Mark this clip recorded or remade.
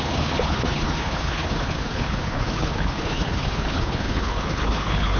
remade